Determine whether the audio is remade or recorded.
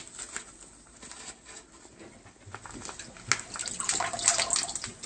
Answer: recorded